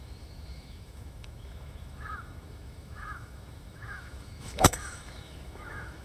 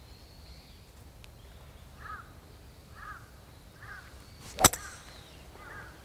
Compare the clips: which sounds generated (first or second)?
first